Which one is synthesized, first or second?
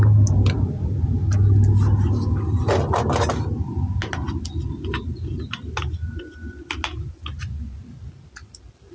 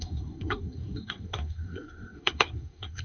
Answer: second